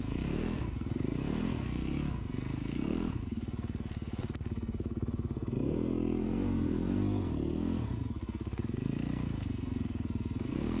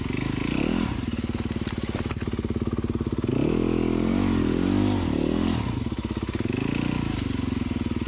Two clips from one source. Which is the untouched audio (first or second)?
second